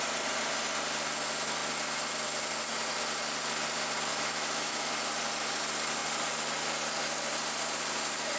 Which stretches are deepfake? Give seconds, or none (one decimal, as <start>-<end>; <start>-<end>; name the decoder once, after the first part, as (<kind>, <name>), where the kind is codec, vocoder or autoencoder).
4.1-4.9 (autoencoder, DAC-VAE)